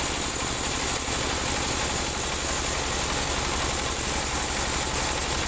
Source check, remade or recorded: recorded